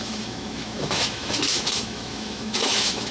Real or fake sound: fake